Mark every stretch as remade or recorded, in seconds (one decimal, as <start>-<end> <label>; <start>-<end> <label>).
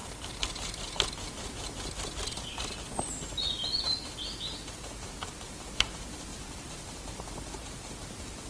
0.0-4.8 recorded; 4.8-8.5 remade